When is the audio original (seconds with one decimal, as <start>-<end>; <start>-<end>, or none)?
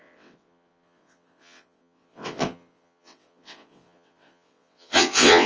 none